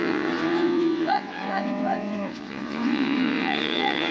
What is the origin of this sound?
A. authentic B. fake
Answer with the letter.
B